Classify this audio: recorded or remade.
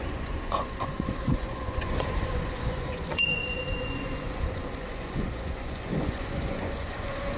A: remade